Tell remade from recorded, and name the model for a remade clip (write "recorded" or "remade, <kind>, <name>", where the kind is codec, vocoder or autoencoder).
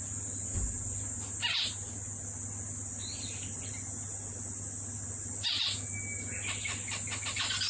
recorded